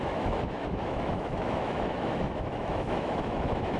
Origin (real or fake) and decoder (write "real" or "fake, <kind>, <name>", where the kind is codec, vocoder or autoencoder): fake, autoencoder, DAC-VAE